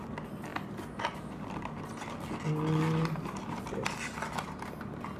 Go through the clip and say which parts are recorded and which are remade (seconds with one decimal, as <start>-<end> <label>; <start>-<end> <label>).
0.0-5.2 recorded